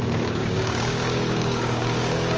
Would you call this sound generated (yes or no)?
yes